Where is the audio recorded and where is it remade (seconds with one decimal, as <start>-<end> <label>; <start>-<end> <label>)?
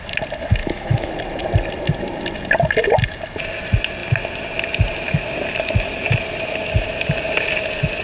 0.0-0.6 recorded; 0.6-1.1 remade; 1.1-8.0 recorded